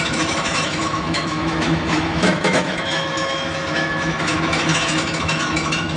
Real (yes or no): no